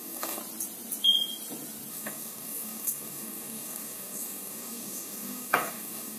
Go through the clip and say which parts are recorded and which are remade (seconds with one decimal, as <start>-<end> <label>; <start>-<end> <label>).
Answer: 0.0-0.4 remade; 0.4-1.9 recorded; 1.9-6.2 remade